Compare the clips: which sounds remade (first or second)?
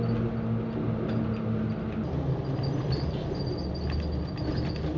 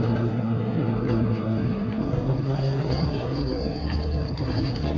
second